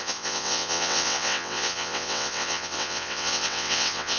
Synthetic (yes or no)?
yes